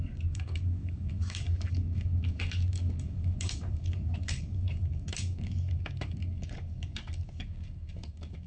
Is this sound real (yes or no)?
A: no